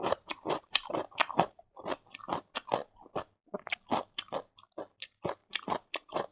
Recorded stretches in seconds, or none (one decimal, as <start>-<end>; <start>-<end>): 1.9-5.4